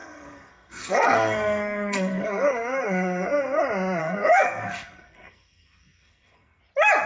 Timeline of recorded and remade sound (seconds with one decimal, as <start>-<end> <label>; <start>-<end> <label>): 0.0-3.6 remade; 3.6-4.0 recorded; 4.0-6.6 remade; 6.6-7.1 recorded